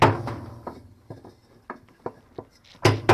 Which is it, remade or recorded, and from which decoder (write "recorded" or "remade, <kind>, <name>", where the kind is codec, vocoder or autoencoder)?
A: recorded